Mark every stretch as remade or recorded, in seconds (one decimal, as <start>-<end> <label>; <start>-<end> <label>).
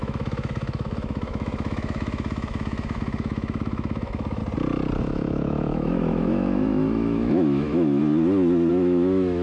0.0-4.4 remade; 4.4-5.0 recorded; 5.0-8.0 remade; 8.0-8.7 recorded; 8.7-9.4 remade